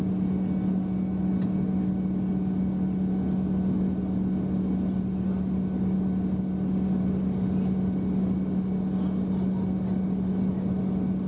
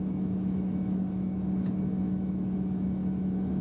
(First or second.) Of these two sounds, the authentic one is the first